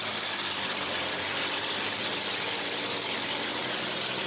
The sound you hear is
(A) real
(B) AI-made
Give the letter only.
A